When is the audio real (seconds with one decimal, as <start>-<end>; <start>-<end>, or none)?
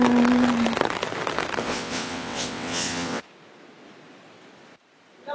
0.0-1.6; 3.2-5.3